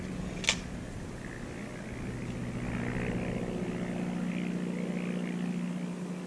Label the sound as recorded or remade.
recorded